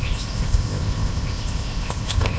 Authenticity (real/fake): fake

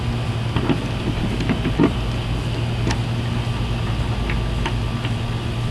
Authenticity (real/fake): real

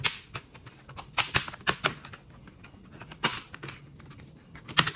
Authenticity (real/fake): real